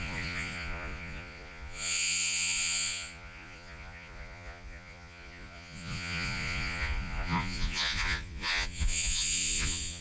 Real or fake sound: fake